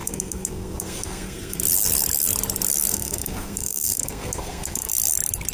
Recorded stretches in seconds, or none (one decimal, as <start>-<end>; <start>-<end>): 1.6-2.9; 4.9-5.5